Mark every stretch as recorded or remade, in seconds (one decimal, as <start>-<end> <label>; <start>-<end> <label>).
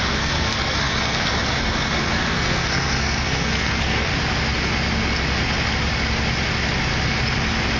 0.0-1.3 remade; 1.3-2.0 recorded; 2.0-4.1 remade; 4.1-7.8 recorded